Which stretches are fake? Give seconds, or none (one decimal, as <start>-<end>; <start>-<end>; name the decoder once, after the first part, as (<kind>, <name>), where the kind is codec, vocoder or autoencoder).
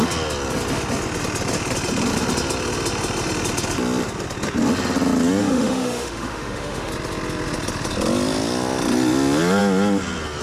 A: 5.4-6.9 (autoencoder, DAC-VAE)